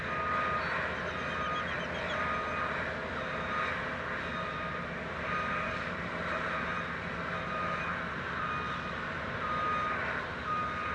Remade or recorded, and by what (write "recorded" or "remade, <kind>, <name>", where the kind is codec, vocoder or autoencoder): recorded